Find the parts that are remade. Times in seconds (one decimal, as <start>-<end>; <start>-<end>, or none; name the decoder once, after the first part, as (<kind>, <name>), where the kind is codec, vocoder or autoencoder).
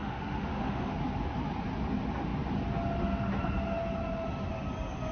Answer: 0.0-0.9 (autoencoder, DAC-VAE)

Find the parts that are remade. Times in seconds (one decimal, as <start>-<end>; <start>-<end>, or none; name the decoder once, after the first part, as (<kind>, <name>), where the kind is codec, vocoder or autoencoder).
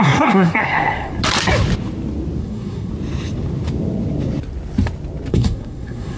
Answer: 0.0-1.1 (codec, SNAC); 2.4-2.9; 5.3-6.2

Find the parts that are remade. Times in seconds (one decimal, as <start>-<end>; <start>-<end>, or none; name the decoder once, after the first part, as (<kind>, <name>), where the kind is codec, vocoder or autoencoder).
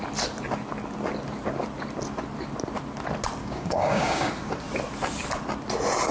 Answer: 3.4-4.3 (codec, DAC)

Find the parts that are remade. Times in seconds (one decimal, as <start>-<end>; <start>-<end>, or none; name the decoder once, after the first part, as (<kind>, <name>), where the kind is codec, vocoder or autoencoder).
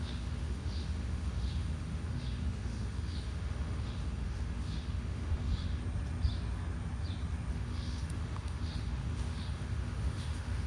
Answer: 0.0-5.8 (autoencoder, DAC-VAE); 7.5-10.7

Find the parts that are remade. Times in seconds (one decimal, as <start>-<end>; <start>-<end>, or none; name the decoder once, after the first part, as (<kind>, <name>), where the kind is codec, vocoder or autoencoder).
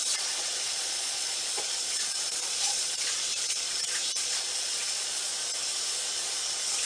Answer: 0.0-5.3 (vocoder, Vocos); 6.1-6.9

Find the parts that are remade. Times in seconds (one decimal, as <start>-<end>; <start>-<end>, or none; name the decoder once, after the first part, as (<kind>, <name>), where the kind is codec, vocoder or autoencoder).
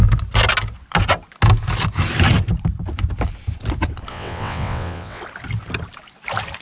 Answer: 4.1-5.2 (vocoder, WaveNeXt)